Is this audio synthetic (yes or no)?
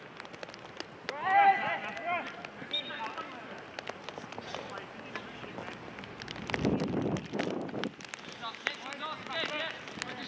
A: no